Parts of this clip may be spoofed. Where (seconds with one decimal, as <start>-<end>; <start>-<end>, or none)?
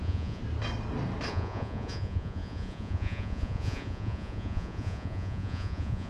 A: 0.0-0.4; 1.3-6.1